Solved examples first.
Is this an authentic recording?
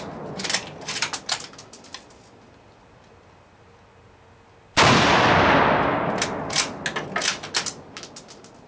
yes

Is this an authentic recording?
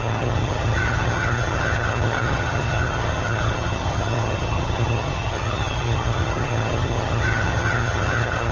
no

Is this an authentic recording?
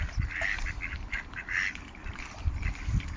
yes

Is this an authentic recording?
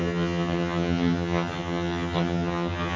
no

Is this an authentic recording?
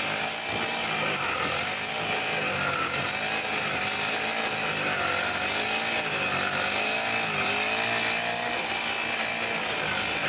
yes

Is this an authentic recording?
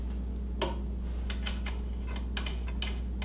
yes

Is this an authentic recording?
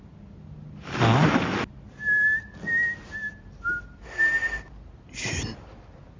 yes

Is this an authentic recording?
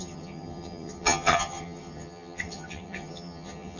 no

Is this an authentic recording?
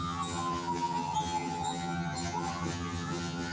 no